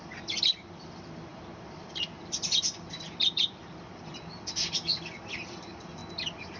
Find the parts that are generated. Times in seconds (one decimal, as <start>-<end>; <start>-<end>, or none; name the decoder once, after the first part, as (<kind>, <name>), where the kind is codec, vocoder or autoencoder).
0.0-6.0 (vocoder, BigVGAN v2)